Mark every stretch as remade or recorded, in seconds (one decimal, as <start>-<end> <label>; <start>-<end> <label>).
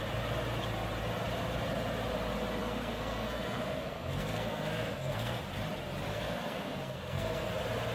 0.0-2.6 recorded; 2.6-5.4 remade; 5.4-6.1 recorded; 6.1-7.5 remade; 7.5-7.9 recorded